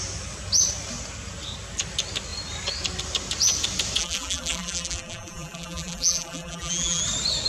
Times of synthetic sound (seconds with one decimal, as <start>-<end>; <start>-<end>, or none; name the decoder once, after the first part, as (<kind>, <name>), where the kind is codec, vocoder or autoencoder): 4.0-7.0 (vocoder, BigVGAN v2)